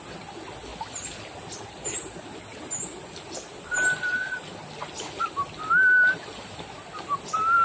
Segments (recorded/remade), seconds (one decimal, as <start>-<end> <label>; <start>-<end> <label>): 0.0-7.6 recorded